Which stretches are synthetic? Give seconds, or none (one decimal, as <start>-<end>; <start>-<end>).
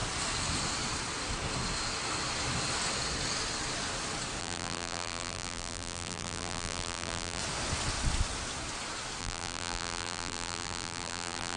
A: 4.4-7.4; 9.2-11.6